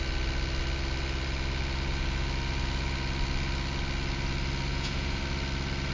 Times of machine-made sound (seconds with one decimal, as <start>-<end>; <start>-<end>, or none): 4.7-5.2